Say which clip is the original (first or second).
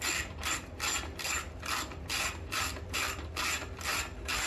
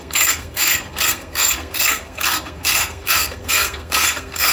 first